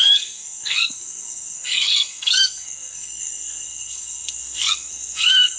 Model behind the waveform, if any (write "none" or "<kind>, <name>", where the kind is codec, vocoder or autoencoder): codec, SNAC